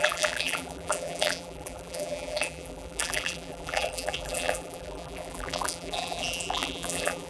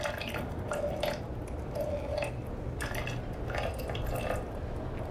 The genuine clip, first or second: second